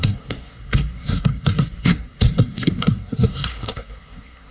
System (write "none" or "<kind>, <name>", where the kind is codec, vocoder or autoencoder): codec, SNAC